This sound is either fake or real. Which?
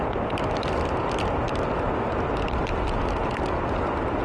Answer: real